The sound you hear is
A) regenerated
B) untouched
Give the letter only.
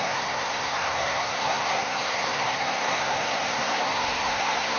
A